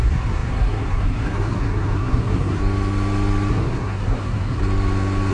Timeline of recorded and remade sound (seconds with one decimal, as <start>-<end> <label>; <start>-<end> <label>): 0.0-2.6 remade; 2.6-3.5 recorded; 3.5-4.6 remade; 4.6-5.3 recorded